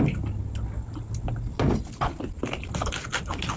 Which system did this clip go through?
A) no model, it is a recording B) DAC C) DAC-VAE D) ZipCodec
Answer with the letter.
A